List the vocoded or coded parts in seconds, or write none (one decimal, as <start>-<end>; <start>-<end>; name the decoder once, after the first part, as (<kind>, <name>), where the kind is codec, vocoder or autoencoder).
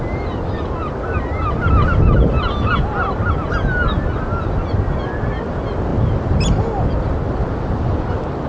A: none